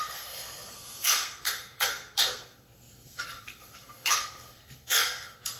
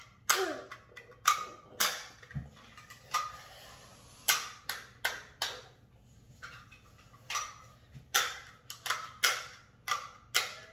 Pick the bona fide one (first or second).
second